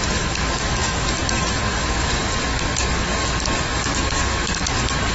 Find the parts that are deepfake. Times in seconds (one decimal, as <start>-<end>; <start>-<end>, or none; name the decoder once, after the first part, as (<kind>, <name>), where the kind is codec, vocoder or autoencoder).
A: 0.0-5.1 (codec, DAC)

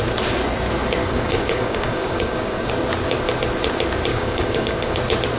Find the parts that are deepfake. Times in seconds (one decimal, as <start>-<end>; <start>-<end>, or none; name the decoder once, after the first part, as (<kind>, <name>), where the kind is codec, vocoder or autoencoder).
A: 1.0-2.7 (codec, DAC); 4.1-5.0

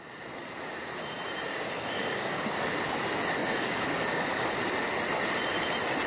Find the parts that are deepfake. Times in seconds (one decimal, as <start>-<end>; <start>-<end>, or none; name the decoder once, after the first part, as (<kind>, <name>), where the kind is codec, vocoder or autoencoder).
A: 1.5-2.5 (codec, DAC); 3.4-4.6